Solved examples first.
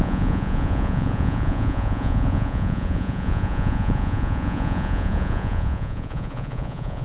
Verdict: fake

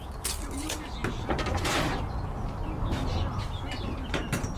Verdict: real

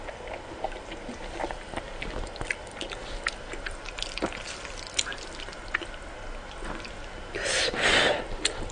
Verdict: real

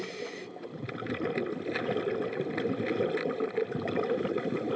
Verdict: real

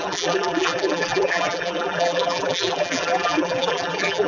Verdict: fake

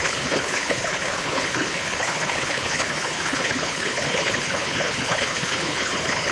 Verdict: fake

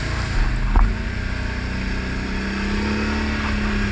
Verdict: real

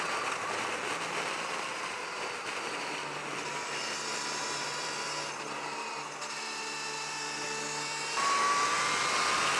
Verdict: real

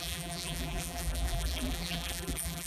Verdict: fake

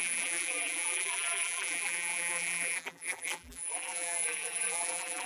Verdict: fake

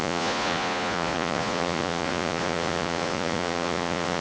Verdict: fake